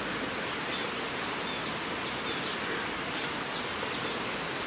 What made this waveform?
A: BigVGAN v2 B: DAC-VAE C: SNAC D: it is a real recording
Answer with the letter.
D